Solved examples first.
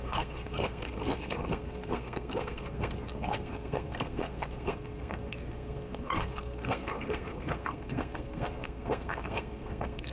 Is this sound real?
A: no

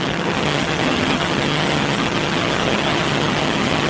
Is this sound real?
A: no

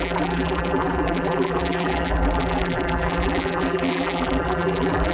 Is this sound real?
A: no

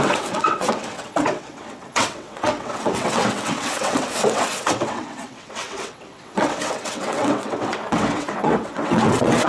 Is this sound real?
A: no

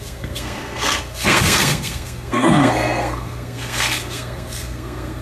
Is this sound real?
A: no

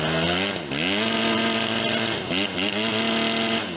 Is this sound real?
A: yes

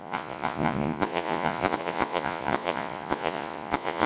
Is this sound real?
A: no